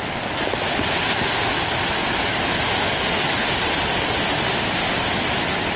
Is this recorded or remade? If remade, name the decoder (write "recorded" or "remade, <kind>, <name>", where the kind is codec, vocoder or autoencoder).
recorded